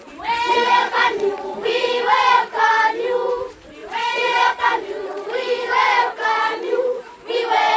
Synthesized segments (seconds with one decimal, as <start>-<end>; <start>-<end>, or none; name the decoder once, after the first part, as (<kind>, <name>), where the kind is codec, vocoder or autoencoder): 0.5-2.7 (vocoder, Vocos); 3.8-7.1